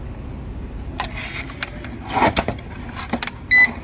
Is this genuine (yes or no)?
yes